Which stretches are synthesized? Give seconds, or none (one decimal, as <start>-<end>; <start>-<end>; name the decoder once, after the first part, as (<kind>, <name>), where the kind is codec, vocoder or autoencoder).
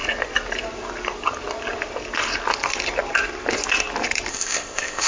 4.3-5.1 (codec, ZipCodec)